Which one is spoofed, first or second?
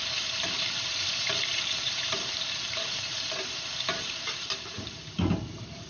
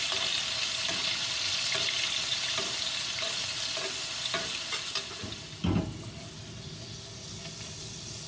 first